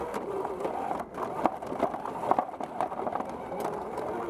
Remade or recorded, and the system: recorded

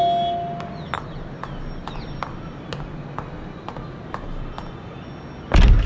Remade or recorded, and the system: recorded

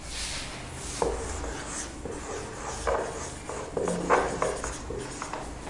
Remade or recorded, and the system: recorded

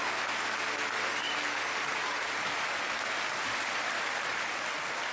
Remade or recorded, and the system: recorded